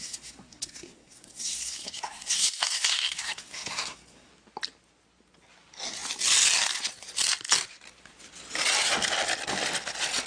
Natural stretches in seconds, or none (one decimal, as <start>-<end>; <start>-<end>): 4.3-10.3

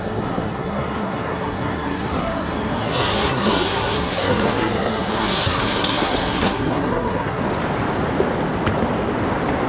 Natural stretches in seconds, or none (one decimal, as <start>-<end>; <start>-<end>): 7.4-9.7

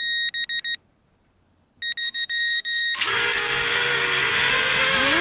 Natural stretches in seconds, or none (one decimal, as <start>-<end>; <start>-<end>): 0.0-2.0; 4.8-5.2

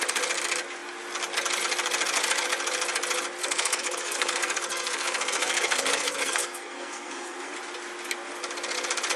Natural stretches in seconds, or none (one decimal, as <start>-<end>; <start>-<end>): 0.0-3.4; 7.5-9.2

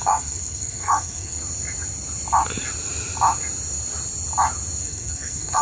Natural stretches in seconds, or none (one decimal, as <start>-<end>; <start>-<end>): 1.4-4.8